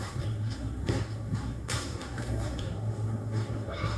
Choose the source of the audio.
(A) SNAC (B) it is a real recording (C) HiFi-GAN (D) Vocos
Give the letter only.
A